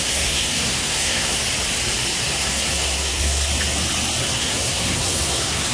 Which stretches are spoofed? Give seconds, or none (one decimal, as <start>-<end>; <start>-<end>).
0.0-1.4; 2.2-3.5; 4.2-5.7

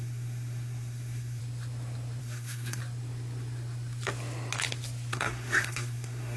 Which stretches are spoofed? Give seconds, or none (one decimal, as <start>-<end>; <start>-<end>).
0.0-1.4; 2.2-2.8; 5.1-6.4

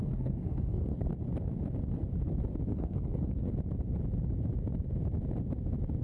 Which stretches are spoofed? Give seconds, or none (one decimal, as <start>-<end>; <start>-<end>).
0.0-1.1; 2.7-3.5

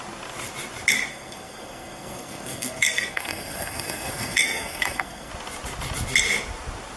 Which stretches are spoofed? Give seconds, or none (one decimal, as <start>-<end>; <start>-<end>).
1.1-5.3

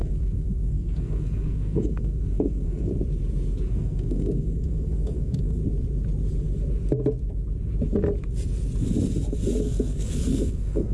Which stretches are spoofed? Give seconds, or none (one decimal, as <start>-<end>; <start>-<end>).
0.0-2.9; 3.7-5.6; 9.6-10.9

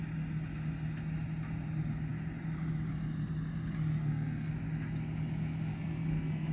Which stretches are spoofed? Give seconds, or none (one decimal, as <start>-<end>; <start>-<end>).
4.0-4.5; 5.7-6.5

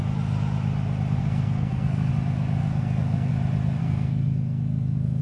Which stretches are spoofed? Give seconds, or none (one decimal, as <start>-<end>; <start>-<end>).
1.2-2.1; 2.6-3.3; 3.8-5.2

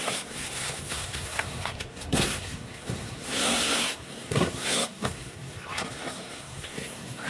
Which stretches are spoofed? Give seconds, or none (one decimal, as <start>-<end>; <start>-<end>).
0.0-7.3